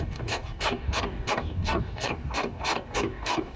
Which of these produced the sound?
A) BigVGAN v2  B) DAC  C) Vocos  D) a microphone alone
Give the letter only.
B